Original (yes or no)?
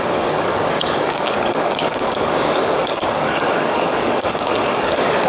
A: no